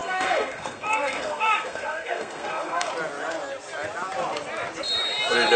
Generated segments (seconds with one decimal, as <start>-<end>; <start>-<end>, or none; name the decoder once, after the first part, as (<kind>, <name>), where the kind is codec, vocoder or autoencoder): 0.0-2.9 (codec, SNAC)